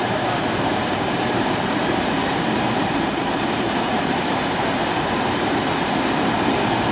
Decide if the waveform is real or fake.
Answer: fake